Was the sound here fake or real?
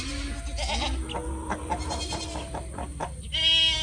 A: real